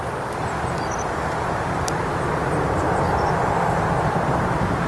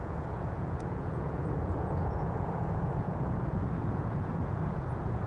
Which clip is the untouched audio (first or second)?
first